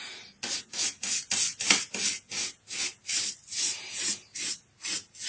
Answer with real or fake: real